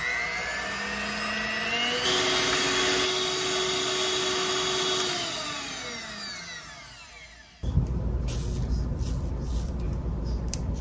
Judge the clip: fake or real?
real